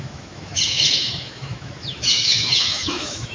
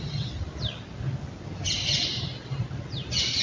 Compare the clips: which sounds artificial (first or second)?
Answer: first